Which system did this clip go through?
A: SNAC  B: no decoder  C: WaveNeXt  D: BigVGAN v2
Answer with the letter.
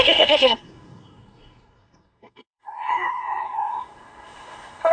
A